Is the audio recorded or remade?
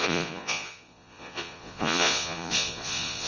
remade